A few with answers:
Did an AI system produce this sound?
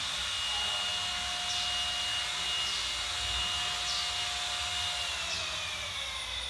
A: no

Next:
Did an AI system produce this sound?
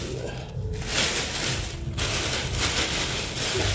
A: no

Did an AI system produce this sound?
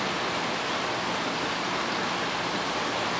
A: no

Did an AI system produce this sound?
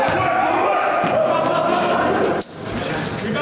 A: no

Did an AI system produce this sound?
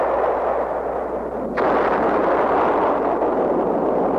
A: no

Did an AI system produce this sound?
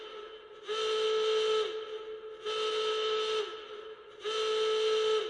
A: no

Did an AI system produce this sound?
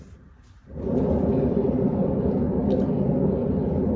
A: no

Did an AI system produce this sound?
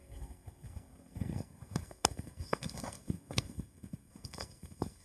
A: yes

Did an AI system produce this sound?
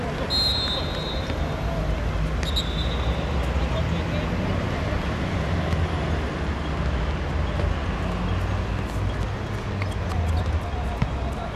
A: no